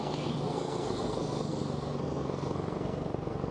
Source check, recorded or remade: remade